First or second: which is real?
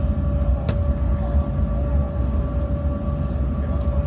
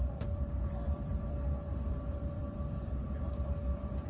first